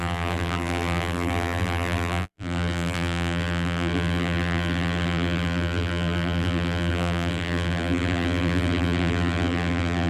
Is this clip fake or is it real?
fake